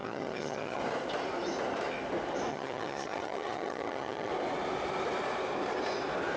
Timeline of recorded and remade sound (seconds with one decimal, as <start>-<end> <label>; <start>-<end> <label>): 0.0-0.8 remade; 0.8-2.5 recorded; 2.5-4.3 remade; 4.3-6.4 recorded